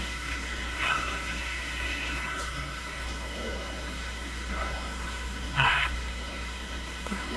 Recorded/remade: remade